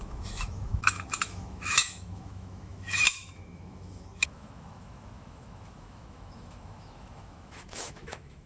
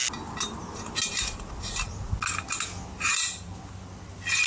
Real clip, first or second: second